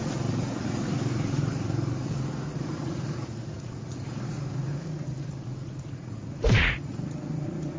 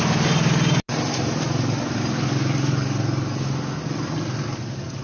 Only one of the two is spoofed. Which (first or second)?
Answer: first